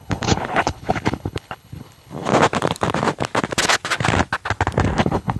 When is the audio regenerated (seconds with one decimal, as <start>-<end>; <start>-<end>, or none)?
0.0-2.3; 5.0-5.4